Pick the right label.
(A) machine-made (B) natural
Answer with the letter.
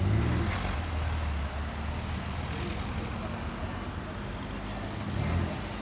B